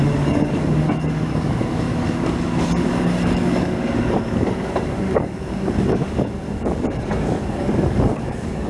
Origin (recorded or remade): remade